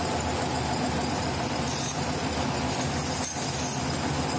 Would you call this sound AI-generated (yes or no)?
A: no